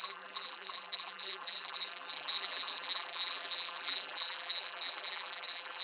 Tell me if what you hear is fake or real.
fake